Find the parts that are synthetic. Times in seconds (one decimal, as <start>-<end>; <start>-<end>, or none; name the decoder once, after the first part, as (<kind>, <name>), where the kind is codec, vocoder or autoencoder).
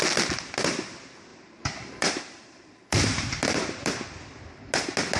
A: 1.3-4.4 (vocoder, BigVGAN v2)